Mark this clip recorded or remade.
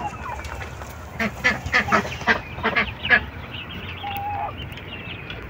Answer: recorded